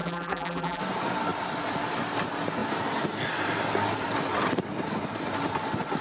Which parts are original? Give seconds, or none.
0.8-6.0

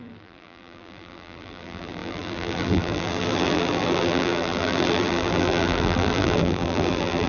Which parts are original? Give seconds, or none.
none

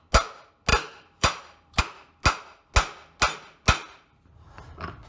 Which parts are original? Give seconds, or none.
0.0-0.7; 1.8-5.1